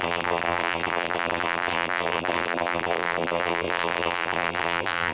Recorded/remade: remade